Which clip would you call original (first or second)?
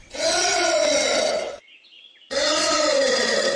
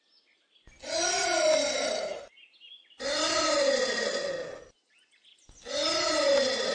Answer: second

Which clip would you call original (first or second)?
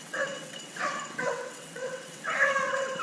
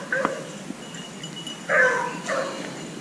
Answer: second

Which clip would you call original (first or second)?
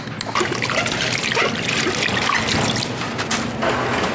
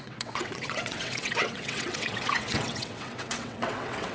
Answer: first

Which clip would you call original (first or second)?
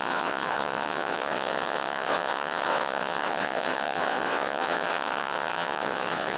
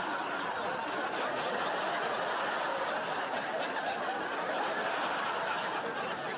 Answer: second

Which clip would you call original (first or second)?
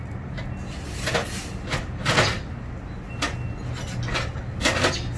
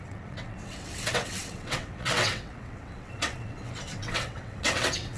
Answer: first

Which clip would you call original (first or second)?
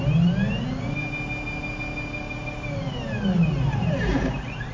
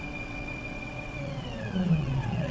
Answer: first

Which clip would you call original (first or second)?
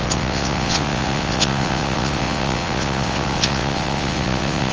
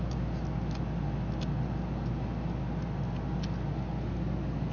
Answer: second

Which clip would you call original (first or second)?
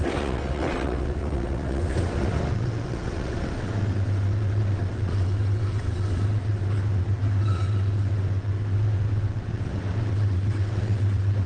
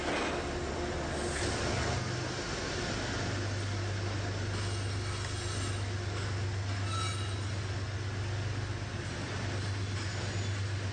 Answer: second